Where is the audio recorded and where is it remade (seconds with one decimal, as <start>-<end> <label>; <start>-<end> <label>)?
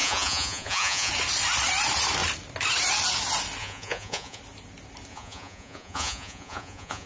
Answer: 0.0-1.1 remade; 1.1-3.6 recorded; 3.6-4.4 remade; 4.4-5.1 recorded; 5.1-7.1 remade